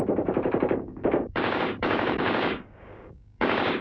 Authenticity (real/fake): fake